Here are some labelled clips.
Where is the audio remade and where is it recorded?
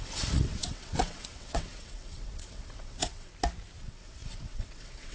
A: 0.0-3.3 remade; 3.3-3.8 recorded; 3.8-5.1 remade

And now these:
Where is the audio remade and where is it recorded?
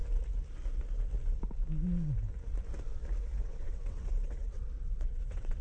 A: 0.0-3.4 recorded; 3.4-5.6 remade